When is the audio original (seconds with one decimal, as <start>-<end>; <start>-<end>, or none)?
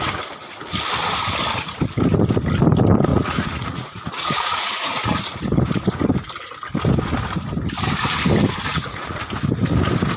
0.0-3.1; 5.2-8.7; 9.2-10.2